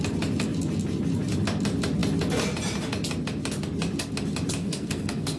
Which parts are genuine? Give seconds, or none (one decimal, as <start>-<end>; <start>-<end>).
0.0-4.6